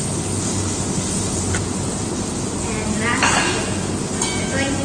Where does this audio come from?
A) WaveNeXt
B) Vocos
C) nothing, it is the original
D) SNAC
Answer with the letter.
C